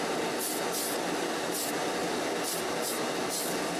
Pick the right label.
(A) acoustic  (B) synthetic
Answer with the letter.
A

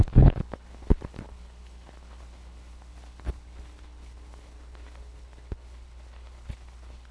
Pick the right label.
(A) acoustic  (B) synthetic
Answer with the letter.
B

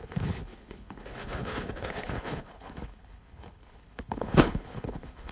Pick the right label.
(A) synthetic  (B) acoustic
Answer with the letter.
A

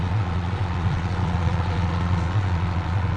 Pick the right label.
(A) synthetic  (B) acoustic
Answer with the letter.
A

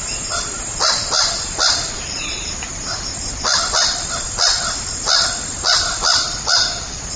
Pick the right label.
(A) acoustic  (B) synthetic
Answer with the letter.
A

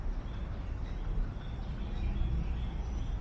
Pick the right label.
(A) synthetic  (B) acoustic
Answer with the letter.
B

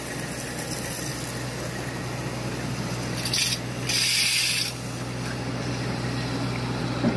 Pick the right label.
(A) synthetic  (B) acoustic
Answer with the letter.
B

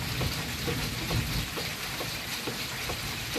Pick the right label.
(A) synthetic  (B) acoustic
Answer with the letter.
B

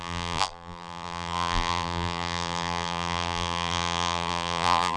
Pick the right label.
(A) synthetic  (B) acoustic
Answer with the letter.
A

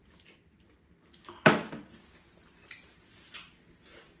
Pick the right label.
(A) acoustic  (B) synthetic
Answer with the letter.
A